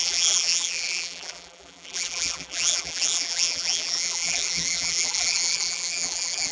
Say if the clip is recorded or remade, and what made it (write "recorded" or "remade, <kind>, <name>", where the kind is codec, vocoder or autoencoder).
remade, vocoder, BigVGAN v2